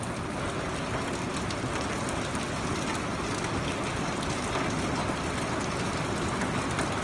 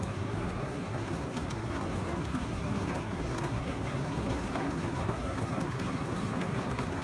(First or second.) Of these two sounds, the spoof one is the second